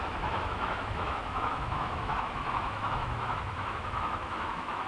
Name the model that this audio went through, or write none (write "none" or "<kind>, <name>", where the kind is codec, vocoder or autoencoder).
autoencoder, DAC-VAE